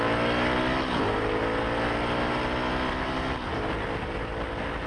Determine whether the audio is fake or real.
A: real